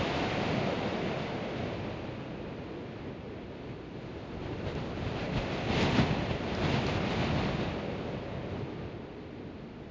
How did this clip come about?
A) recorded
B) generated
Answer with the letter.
A